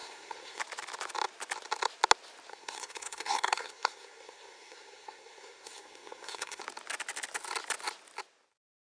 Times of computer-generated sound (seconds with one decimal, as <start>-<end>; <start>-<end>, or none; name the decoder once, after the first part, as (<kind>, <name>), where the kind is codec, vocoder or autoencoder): 0.0-0.6 (codec, SNAC); 2.5-6.6